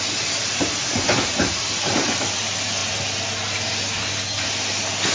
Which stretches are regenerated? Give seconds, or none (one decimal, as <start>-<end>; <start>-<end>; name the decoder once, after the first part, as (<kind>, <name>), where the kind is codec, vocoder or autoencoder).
0.0-2.8 (vocoder, BigVGAN v2)